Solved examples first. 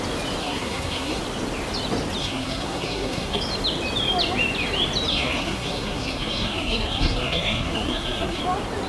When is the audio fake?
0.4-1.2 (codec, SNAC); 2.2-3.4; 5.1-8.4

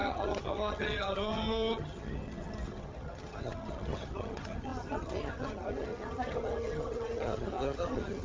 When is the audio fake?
0.0-8.2 (vocoder, HiFi-GAN)

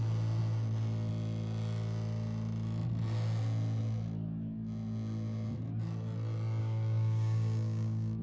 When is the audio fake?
6.6-8.2 (codec, DAC)

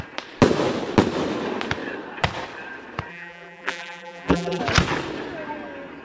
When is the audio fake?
3.1-4.6 (vocoder, BigVGAN v2)